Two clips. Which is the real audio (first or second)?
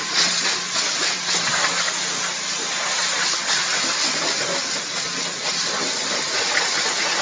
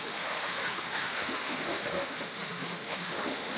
first